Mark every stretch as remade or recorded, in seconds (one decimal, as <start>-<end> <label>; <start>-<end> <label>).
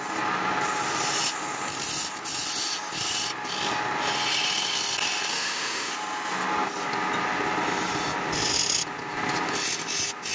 0.0-5.3 recorded; 5.3-5.9 remade; 5.9-10.3 recorded